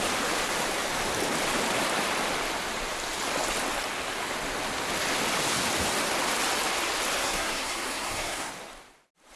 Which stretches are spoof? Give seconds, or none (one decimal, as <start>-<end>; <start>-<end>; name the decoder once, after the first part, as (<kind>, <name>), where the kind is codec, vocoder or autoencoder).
7.2-8.5 (codec, SNAC)